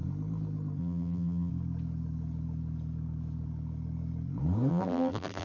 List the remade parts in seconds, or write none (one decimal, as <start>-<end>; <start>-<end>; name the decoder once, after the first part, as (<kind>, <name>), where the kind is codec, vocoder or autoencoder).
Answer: 0.8-1.5 (vocoder, BigVGAN v2); 4.7-5.4